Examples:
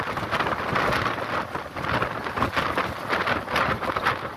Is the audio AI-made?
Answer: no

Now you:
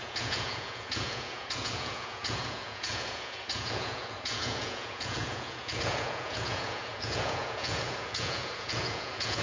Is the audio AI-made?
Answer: yes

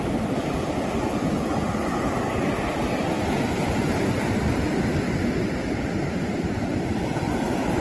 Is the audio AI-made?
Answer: no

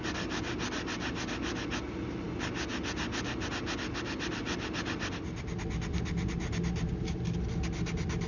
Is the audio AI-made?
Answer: no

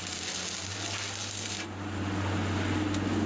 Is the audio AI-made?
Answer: no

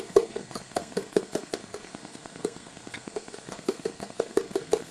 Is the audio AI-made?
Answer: yes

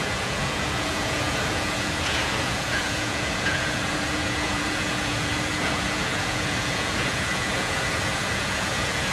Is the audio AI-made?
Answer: yes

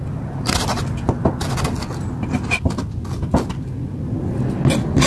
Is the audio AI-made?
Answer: no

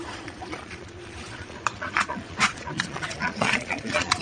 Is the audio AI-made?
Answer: yes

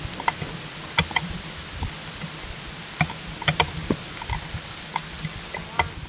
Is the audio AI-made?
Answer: no